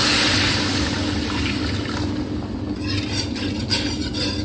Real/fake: real